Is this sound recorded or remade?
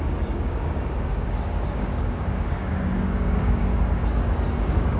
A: remade